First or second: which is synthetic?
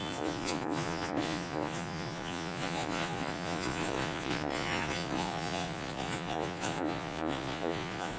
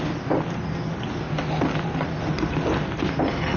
first